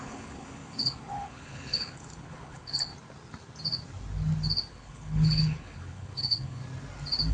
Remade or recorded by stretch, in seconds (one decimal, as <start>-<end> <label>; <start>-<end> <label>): 0.0-2.9 remade; 2.9-4.7 recorded; 4.7-6.6 remade; 6.6-7.3 recorded